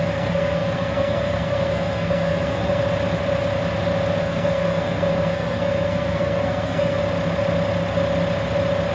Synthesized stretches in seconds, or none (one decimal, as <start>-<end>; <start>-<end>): 0.0-2.8; 4.2-7.0